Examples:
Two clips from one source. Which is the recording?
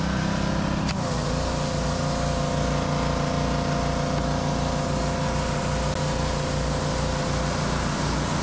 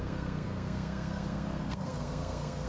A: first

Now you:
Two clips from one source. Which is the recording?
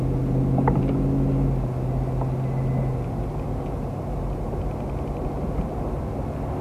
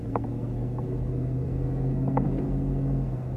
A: first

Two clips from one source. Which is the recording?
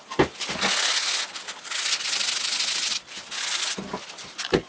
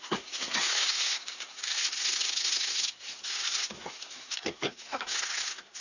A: first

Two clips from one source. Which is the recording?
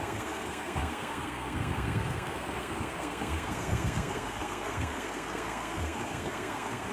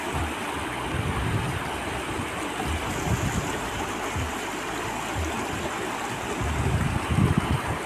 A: second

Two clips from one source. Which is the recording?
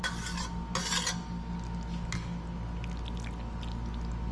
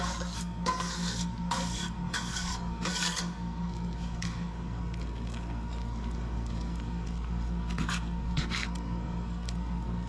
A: first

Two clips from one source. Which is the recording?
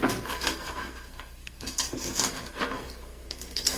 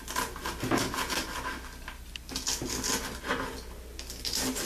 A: second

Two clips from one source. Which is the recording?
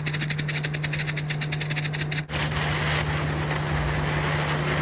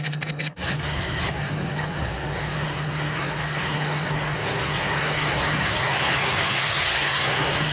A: first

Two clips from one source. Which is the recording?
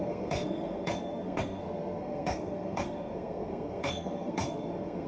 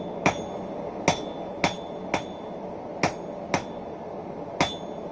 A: second